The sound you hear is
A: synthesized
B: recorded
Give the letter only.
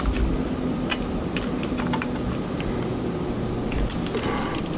B